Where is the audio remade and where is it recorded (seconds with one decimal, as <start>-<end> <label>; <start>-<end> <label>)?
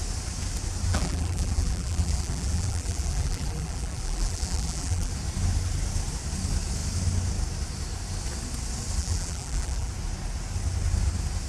0.0-0.9 recorded; 0.9-5.1 remade; 5.1-9.0 recorded; 9.0-9.9 remade; 9.9-11.5 recorded